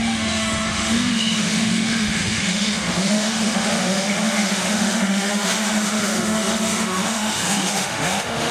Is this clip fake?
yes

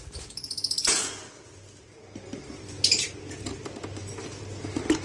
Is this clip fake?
no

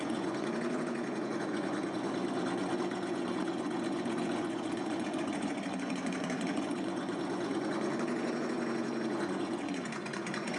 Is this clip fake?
yes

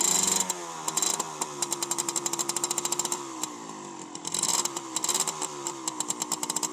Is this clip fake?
no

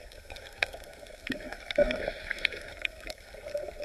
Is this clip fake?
yes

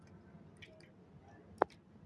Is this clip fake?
no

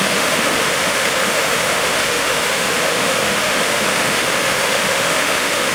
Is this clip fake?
yes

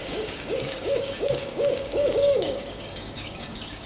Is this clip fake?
yes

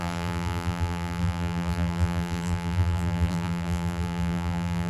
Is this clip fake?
yes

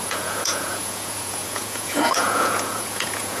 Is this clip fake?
yes